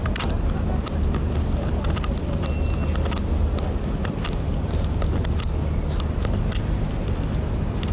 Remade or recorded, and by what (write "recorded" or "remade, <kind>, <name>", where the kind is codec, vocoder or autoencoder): recorded